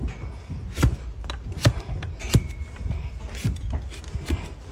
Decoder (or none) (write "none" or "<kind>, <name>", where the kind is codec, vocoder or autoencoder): none